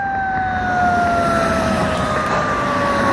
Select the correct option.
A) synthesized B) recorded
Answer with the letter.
B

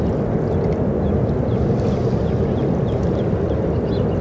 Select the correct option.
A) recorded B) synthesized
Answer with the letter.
A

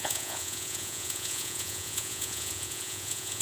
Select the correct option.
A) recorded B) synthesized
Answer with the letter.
B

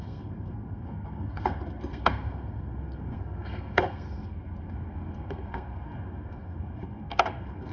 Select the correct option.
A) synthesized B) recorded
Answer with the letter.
A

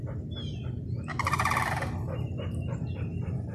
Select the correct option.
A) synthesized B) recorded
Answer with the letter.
B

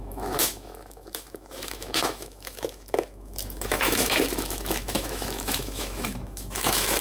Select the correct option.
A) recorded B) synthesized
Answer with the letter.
B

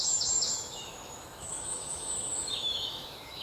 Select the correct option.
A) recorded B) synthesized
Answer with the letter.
B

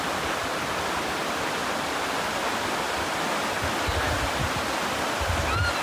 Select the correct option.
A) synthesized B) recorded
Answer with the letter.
B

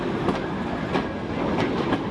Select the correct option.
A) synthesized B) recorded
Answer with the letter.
B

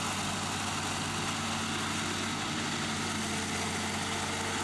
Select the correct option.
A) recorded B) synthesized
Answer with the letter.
A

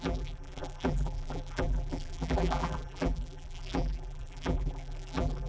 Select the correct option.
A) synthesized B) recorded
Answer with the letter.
A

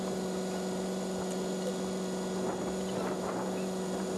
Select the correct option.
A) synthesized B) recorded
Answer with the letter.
B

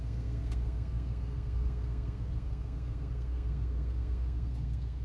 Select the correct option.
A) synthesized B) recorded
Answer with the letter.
A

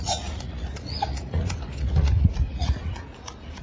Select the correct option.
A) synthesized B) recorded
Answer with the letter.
A